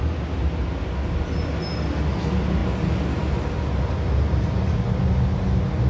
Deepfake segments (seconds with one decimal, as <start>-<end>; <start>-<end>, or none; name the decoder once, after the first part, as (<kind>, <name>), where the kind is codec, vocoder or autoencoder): none

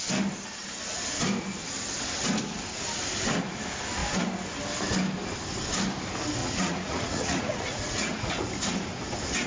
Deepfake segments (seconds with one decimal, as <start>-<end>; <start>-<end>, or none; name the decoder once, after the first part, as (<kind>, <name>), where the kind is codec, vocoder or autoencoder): 6.4-8.3 (vocoder, Vocos)

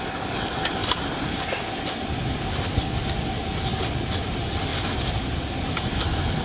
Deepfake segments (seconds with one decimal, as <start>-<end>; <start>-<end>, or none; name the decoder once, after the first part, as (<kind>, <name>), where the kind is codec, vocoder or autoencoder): none

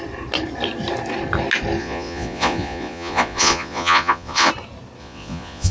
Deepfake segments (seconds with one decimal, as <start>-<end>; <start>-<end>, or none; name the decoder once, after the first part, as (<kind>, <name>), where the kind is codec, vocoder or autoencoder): 1.8-4.5 (vocoder, Vocos); 5.0-5.7

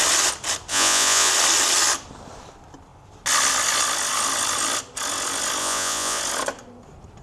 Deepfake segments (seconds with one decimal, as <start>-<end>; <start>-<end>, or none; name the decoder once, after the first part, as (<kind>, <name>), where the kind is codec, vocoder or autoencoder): 0.7-1.3 (vocoder, Vocos); 5.6-6.2

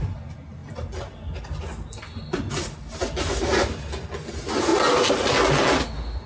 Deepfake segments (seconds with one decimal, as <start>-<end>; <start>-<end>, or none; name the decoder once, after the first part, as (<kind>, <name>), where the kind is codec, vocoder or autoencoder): none

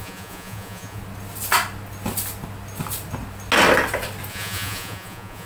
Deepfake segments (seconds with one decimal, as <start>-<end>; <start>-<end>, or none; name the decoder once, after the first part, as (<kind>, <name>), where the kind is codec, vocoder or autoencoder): 0.0-1.0 (vocoder, Vocos); 4.3-5.5